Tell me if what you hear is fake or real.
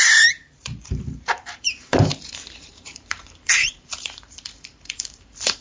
fake